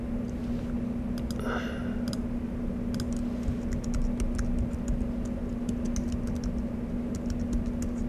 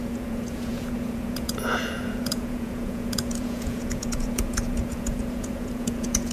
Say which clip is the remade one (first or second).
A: second